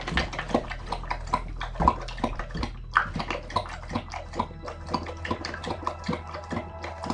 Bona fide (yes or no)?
yes